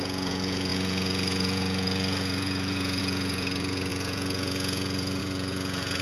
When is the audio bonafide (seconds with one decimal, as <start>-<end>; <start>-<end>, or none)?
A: none